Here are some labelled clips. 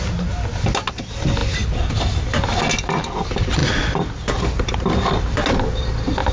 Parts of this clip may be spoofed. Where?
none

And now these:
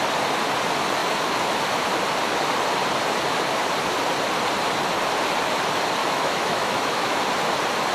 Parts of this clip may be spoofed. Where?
6.0-7.2

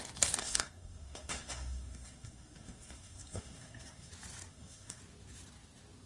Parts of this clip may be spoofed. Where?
0.4-4.1; 4.5-5.0